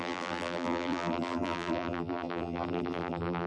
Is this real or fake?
fake